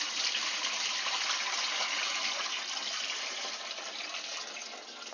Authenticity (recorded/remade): recorded